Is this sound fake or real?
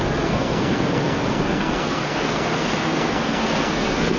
fake